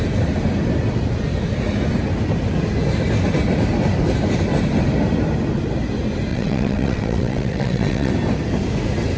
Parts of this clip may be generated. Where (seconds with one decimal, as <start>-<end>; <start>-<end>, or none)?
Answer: 6.3-8.1